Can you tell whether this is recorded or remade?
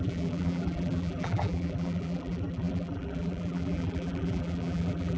remade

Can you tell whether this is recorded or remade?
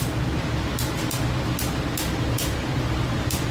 recorded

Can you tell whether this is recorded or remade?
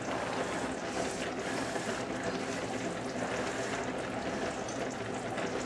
recorded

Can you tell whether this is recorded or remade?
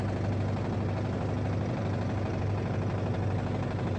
recorded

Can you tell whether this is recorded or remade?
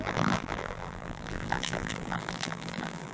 remade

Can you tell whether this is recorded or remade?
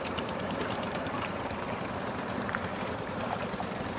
remade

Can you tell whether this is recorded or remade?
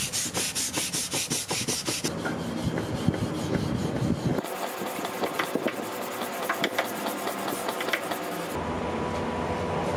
recorded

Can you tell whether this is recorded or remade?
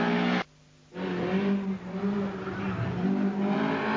recorded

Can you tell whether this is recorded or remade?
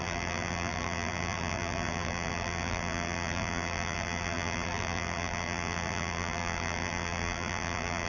remade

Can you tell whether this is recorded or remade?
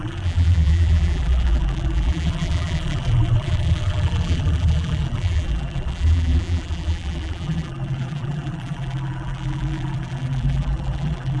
remade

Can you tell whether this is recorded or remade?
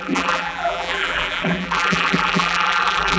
remade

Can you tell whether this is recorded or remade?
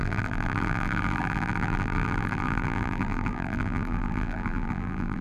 remade